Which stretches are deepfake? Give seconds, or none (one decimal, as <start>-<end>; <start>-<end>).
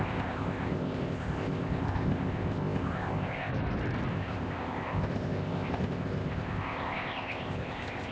0.0-3.5; 4.1-8.1